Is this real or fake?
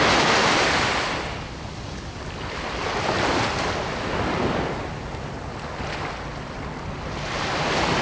real